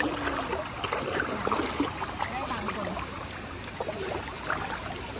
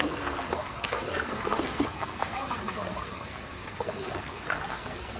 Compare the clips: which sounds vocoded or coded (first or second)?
second